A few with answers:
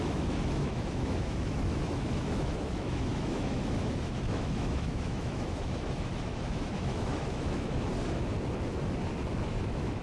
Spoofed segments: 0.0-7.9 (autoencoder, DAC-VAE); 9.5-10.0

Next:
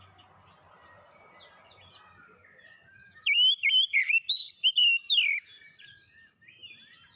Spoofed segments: 3.0-3.7 (autoencoder, DAC-VAE)

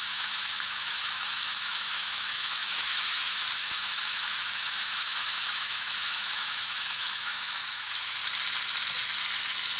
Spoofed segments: 0.0-8.2 (autoencoder, DAC-VAE)

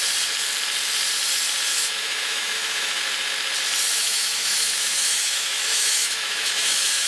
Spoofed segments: 1.7-3.0 (autoencoder, DAC-VAE); 4.0-7.1

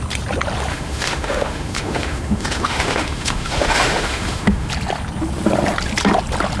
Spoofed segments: 0.7-4.7 (autoencoder, DAC-VAE)

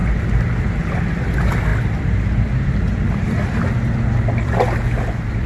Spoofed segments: none